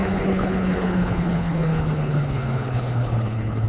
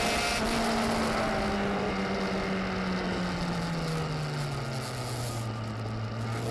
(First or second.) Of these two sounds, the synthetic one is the first